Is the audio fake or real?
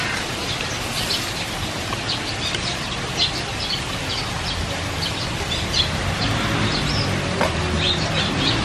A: real